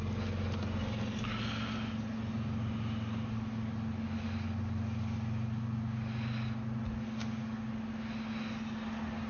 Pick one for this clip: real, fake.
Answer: real